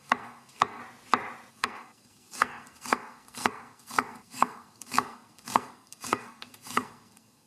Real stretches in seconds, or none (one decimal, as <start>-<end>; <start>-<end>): 0.8-1.5